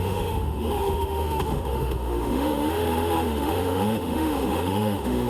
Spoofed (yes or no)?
yes